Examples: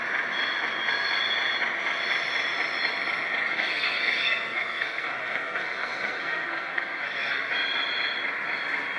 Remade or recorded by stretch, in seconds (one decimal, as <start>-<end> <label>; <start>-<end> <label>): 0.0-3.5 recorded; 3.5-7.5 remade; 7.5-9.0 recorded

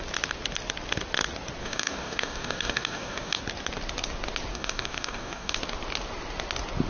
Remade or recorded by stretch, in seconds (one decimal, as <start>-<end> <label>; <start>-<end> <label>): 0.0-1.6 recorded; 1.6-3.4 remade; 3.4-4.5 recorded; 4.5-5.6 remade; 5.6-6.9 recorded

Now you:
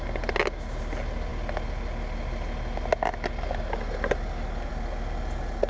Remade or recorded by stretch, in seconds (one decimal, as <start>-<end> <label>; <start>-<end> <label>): 0.0-5.7 recorded

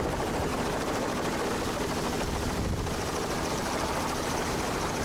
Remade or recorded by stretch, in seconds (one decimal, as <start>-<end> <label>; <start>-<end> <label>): 0.0-0.5 remade; 0.5-3.5 recorded; 3.5-5.0 remade

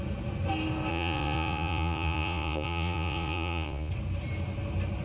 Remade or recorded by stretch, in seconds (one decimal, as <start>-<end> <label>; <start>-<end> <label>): 0.0-0.9 recorded; 0.9-3.9 remade; 3.9-5.0 recorded

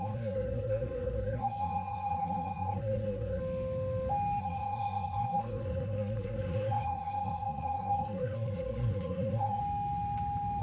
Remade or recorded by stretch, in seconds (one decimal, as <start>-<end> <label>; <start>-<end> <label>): 0.0-3.4 remade; 3.4-4.4 recorded; 4.4-9.6 remade; 9.6-10.6 recorded

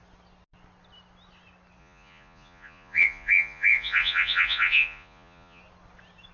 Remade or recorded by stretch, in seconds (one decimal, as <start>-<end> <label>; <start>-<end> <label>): 0.0-1.8 recorded; 1.8-5.6 remade; 5.6-6.3 recorded

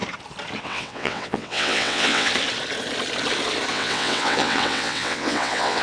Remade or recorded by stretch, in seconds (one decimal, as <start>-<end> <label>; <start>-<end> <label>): 0.0-0.6 recorded; 0.6-2.3 remade; 2.3-3.7 recorded; 3.7-5.8 remade